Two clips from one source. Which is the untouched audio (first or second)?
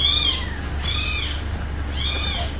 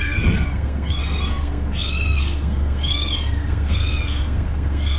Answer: first